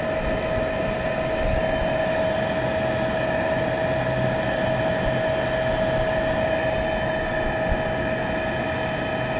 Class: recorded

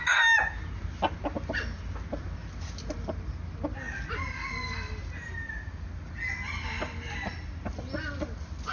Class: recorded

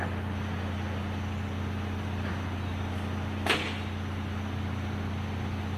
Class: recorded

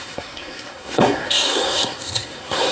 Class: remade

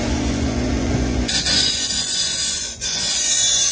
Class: remade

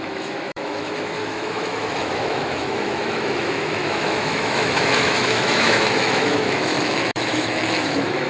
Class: remade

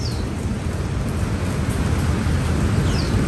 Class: recorded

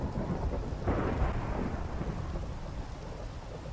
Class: recorded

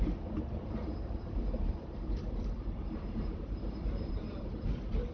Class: remade